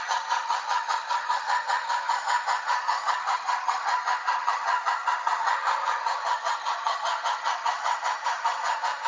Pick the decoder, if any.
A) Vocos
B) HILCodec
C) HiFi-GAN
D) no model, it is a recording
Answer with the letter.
C